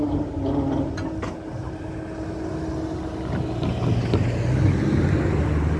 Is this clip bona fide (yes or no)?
yes